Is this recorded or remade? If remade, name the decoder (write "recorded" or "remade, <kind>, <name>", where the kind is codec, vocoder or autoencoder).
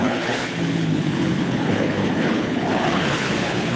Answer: remade, codec, HILCodec